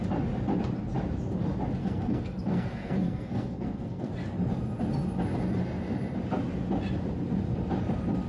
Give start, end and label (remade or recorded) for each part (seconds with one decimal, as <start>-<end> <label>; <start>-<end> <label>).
0.0-1.8 recorded; 1.8-4.1 remade; 4.1-8.3 recorded